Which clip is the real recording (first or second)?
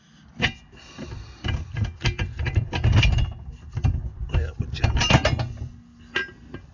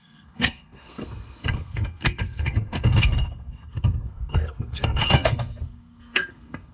first